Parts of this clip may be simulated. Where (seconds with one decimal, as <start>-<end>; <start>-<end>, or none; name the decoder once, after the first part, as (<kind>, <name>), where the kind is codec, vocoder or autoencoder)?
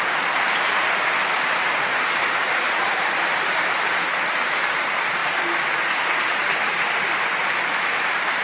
0.0-5.2 (vocoder, BigVGAN v2); 7.0-8.4